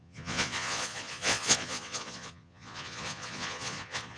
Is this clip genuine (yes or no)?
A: no